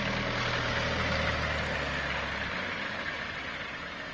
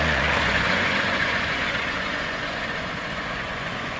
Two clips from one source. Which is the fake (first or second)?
second